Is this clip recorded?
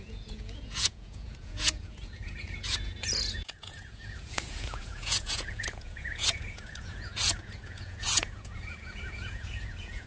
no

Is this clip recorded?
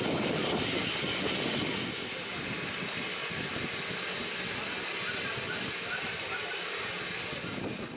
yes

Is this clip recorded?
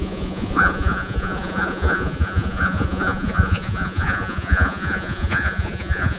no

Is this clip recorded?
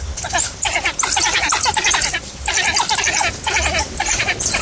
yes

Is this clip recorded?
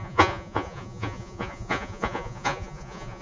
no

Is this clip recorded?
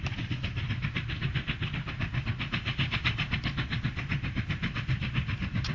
yes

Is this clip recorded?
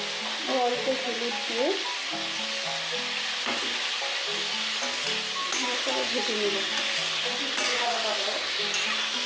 yes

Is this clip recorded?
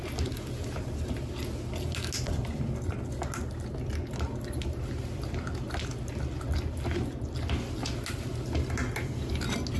yes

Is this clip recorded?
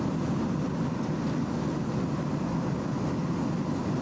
yes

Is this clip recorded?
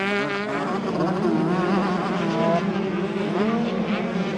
yes